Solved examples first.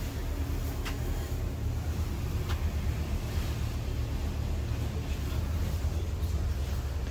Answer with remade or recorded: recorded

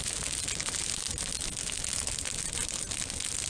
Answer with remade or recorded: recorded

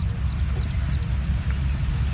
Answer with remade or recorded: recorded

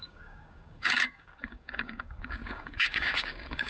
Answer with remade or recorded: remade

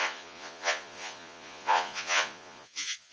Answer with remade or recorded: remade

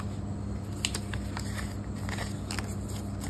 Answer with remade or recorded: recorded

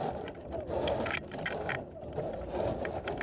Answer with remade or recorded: recorded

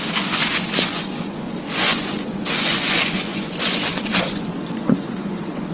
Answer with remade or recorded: remade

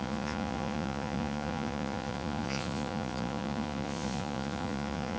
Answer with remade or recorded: remade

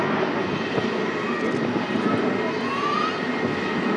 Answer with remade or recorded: recorded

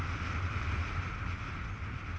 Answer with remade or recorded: recorded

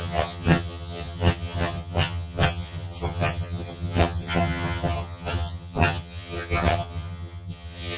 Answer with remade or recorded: remade